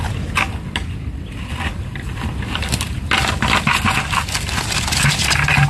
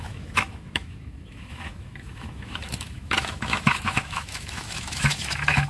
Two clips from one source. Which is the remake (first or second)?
second